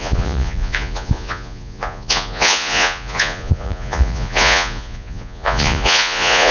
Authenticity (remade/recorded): remade